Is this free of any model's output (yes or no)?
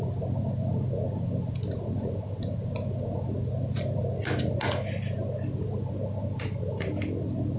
yes